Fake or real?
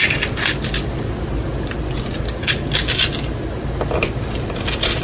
real